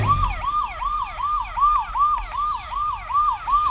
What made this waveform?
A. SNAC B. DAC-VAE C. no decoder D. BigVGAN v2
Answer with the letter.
C